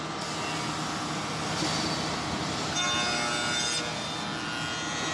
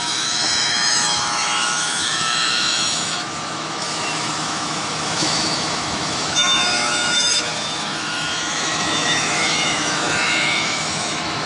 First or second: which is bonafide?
first